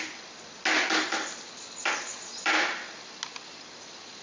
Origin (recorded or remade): recorded